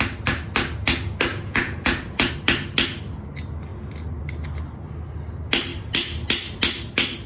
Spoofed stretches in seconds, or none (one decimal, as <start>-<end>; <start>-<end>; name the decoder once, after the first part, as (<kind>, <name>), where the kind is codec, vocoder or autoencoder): 1.3-2.3 (vocoder, Vocos)